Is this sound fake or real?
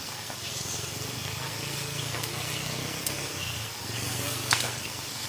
fake